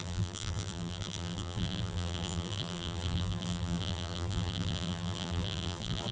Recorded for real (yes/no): no